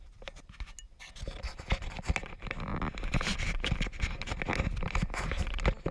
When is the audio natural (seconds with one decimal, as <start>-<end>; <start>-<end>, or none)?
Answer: 0.0-5.9